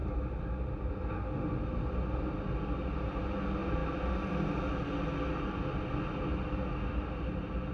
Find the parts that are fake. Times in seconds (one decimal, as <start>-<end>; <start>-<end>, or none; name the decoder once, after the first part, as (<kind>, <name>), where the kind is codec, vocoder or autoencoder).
none